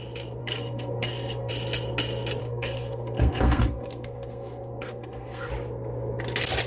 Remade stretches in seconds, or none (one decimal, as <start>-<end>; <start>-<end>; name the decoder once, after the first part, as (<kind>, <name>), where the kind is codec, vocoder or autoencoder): 0.4-1.5 (codec, SNAC); 2.4-5.5